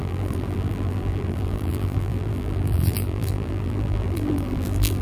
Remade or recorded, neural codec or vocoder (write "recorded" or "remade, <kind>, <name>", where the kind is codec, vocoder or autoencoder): remade, vocoder, BigVGAN v2